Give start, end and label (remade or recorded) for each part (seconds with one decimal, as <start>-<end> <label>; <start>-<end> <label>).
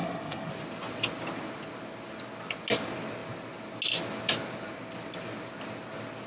0.0-0.5 remade; 0.5-6.3 recorded